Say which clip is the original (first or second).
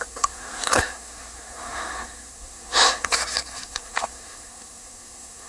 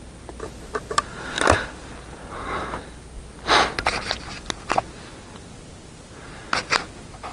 second